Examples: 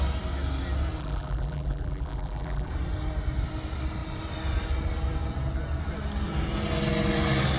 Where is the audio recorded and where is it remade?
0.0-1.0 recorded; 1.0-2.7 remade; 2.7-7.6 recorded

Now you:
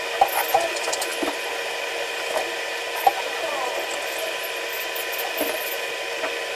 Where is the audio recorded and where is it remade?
0.0-6.6 recorded